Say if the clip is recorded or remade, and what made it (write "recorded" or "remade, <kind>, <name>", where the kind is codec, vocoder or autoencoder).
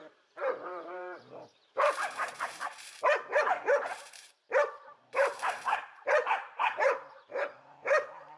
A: remade, vocoder, BigVGAN v2